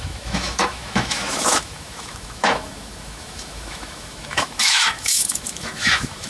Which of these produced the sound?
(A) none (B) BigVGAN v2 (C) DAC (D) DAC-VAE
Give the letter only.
D